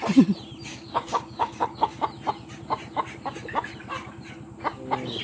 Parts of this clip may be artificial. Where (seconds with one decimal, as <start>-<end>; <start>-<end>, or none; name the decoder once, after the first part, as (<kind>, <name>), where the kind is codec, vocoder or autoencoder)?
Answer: 0.7-1.9 (codec, DAC)